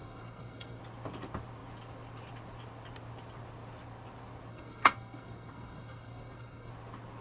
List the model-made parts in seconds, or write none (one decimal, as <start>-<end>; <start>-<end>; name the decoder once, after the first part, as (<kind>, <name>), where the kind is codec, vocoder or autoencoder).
0.0-0.8 (codec, SNAC); 4.5-6.7